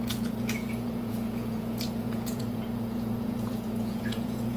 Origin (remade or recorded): remade